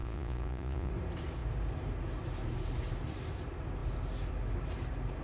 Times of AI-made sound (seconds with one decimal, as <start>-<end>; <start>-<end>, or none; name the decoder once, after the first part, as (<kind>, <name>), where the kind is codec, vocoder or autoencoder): 0.0-0.9 (vocoder, Vocos)